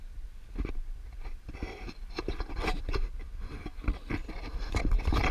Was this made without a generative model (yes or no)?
yes